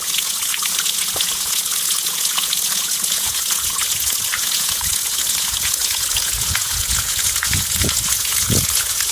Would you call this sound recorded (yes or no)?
no